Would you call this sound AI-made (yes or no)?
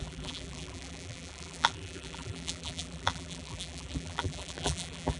yes